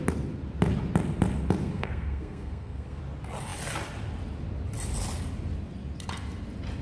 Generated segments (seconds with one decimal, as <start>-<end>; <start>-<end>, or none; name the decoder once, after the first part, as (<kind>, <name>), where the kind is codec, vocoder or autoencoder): 1.6-3.0 (codec, SNAC)